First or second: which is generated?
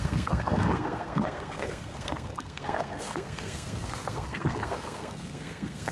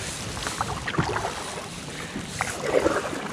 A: first